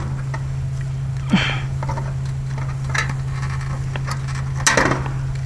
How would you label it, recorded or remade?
recorded